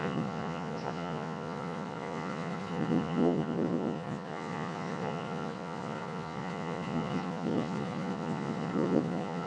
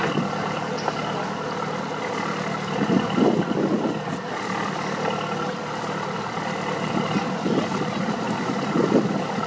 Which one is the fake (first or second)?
first